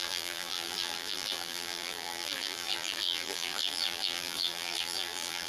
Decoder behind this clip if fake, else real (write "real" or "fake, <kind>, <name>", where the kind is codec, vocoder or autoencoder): fake, vocoder, BigVGAN v2